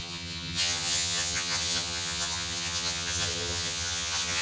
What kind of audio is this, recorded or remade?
remade